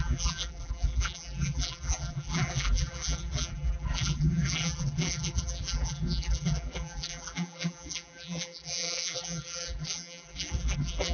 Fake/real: fake